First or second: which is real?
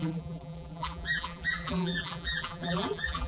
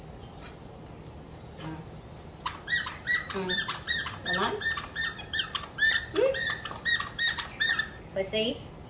second